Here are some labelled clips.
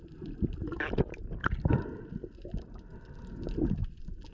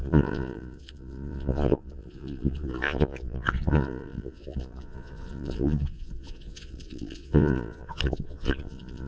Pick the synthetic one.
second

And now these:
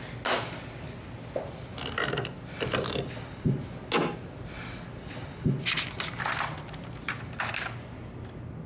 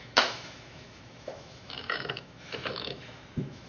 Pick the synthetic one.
second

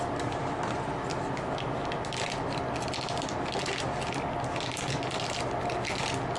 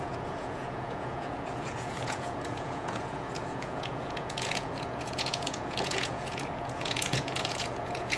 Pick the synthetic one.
second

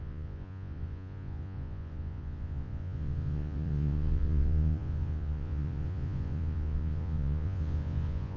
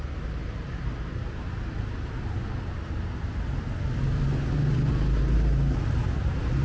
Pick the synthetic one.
first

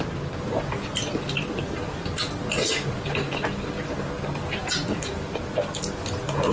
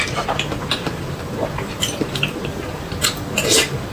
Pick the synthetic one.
second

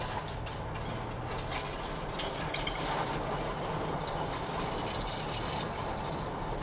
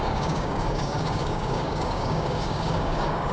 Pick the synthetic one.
second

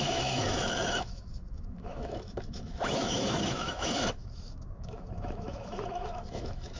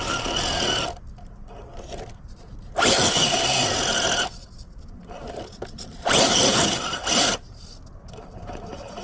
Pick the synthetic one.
first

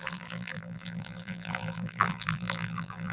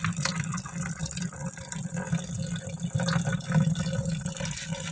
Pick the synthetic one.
first